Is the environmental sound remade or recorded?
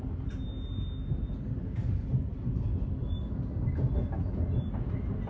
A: recorded